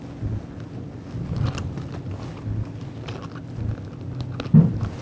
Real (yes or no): yes